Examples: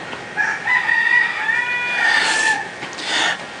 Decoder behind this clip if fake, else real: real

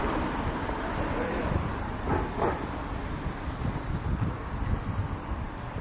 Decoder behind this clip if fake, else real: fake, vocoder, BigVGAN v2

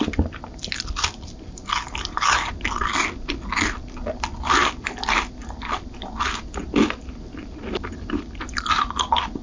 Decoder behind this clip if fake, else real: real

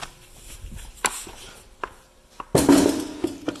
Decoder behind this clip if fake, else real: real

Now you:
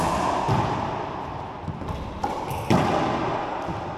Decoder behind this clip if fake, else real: real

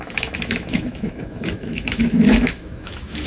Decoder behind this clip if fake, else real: fake, autoencoder, DAC-VAE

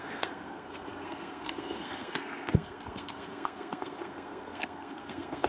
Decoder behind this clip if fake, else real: fake, codec, SNAC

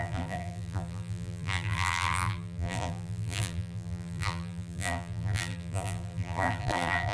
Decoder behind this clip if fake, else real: fake, vocoder, BigVGAN v2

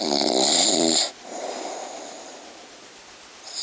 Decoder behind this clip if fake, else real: real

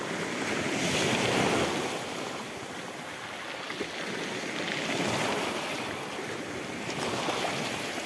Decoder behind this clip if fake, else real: real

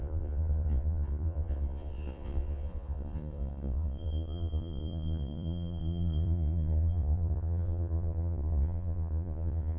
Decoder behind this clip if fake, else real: fake, vocoder, Vocos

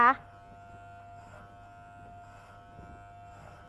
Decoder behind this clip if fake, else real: real